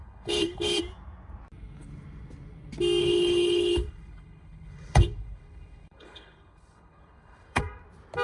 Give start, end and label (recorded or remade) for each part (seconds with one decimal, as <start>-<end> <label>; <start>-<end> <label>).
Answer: 0.0-0.8 remade; 0.8-3.0 recorded; 3.0-7.6 remade; 7.6-8.2 recorded